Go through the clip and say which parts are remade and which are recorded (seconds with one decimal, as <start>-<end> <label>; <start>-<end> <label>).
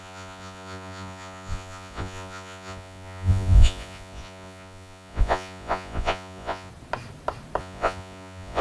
0.0-6.7 remade; 6.7-7.6 recorded; 7.6-8.6 remade